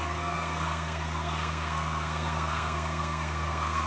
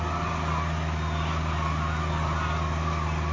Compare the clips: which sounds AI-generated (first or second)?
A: first